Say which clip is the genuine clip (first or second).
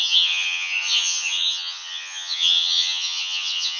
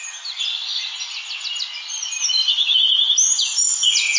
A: second